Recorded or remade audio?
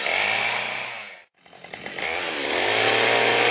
recorded